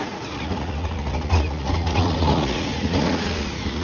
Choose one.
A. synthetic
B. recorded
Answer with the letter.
A